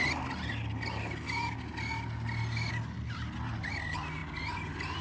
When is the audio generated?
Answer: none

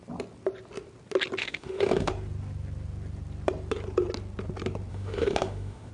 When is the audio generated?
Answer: 1.4-2.1 (autoencoder, DAC-VAE); 4.9-5.9

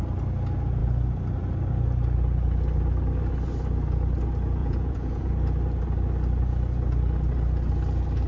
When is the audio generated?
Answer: 4.6-5.3 (vocoder, Vocos)

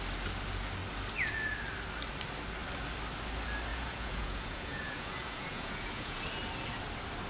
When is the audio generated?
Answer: 3.7-6.2 (vocoder, Vocos)

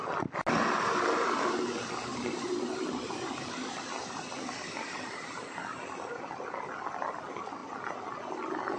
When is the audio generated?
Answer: 2.1-7.1 (vocoder, BigVGAN v2)

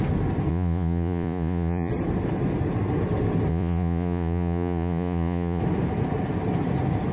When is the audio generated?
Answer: 0.5-1.9 (vocoder, Vocos); 3.5-5.6